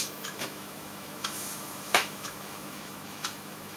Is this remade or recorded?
remade